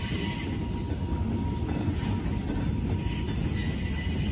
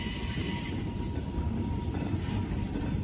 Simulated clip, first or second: second